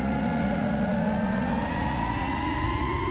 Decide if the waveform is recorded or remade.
remade